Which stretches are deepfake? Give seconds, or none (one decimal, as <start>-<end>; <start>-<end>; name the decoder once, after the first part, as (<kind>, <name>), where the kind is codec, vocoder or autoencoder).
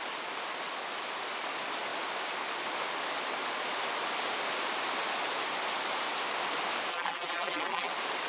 6.9-7.9 (vocoder, BigVGAN v2)